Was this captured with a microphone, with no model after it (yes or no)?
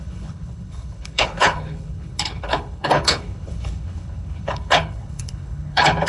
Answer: no